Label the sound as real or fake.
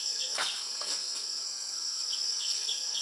fake